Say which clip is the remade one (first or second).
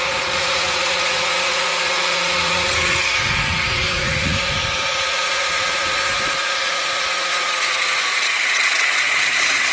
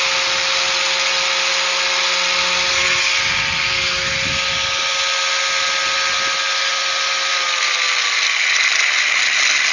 first